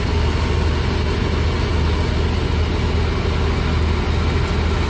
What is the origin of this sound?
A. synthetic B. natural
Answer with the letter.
B